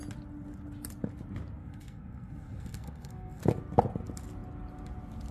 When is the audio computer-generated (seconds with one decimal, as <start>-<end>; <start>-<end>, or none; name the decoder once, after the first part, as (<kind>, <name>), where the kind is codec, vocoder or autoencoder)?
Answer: 1.6-3.4 (codec, SNAC)